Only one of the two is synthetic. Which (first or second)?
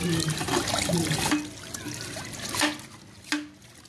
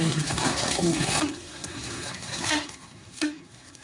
second